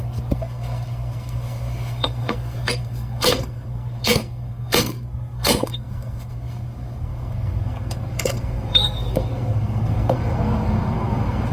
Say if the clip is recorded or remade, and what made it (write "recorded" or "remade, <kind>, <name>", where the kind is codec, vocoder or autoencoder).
remade, codec, SNAC